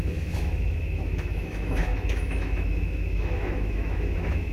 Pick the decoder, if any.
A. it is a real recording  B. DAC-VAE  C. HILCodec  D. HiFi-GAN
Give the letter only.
B